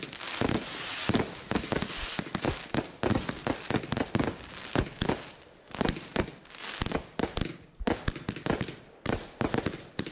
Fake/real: real